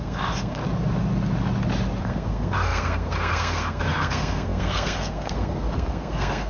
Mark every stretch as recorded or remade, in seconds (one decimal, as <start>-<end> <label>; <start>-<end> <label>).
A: 0.0-0.6 remade; 0.6-2.0 recorded; 2.0-6.5 remade